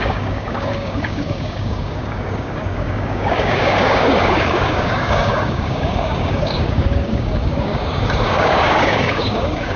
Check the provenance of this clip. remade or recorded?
remade